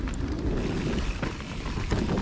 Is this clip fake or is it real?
real